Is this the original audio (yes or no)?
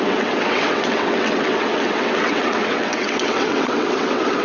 no